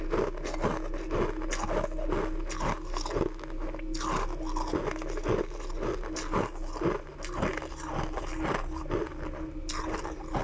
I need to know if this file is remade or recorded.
recorded